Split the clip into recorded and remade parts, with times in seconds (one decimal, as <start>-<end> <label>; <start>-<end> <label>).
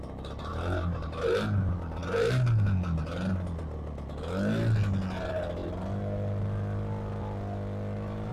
0.0-0.5 recorded; 0.5-1.2 remade; 1.2-8.3 recorded